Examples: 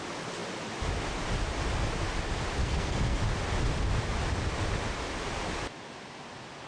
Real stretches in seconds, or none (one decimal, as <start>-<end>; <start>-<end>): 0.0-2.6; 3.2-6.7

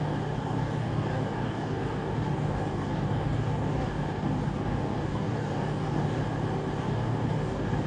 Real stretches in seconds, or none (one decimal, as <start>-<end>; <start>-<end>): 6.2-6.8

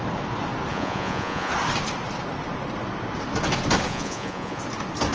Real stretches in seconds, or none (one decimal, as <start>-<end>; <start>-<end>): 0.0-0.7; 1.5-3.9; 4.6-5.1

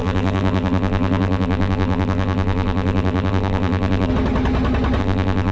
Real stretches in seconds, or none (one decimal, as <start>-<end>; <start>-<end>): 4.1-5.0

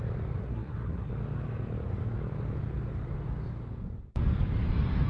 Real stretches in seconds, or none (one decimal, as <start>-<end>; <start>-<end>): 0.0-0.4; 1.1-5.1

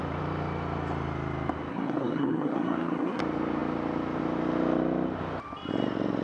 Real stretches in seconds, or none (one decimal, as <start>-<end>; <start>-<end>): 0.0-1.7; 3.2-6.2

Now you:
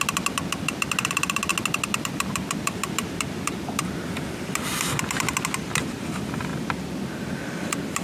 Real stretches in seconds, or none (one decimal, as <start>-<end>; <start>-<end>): 1.5-2.0; 6.5-7.1